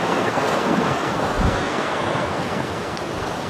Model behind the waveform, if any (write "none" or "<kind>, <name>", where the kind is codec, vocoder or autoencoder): codec, SNAC